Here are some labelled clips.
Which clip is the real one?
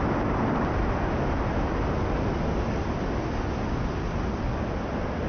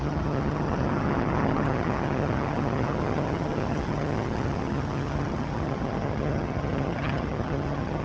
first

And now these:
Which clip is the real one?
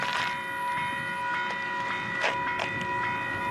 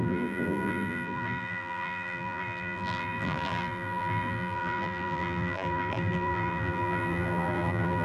first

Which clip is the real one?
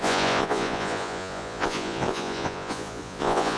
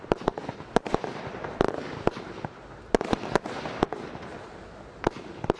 second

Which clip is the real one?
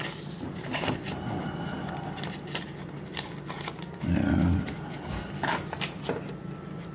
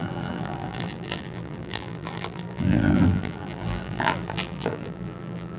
first